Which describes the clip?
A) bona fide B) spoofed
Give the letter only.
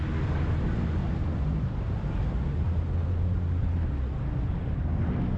A